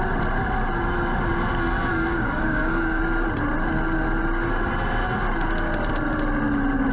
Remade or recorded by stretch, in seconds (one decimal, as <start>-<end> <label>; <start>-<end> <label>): 0.0-1.9 recorded; 1.9-3.0 remade; 3.0-6.9 recorded